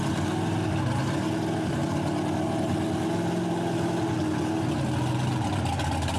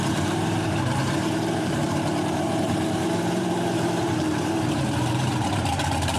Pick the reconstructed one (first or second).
second